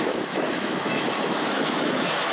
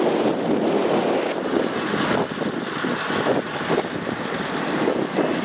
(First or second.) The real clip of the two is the second